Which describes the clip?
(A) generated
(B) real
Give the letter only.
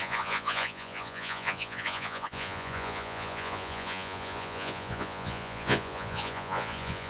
A